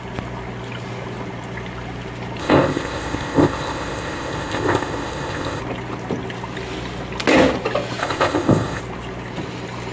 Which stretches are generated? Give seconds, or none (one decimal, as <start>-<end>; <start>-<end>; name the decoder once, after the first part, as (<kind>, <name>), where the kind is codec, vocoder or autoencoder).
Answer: 2.4-5.6 (codec, ZipCodec); 8.0-8.8